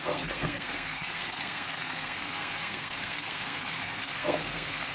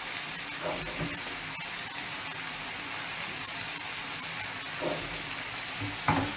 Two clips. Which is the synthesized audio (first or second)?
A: first